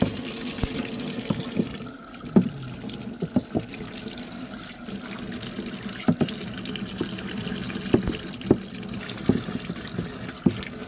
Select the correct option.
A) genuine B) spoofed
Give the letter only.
A